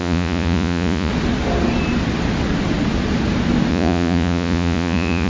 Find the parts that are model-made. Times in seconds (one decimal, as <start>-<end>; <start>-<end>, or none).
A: 0.0-1.1; 3.7-5.3